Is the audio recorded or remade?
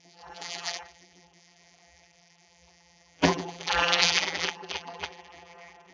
remade